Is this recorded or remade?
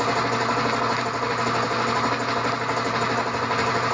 recorded